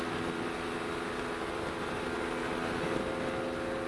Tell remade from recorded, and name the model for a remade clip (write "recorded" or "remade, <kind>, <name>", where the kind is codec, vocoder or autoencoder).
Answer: recorded